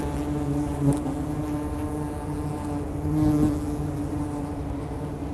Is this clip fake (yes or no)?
no